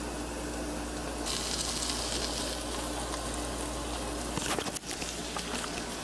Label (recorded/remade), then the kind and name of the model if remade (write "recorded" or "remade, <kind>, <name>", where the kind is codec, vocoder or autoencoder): recorded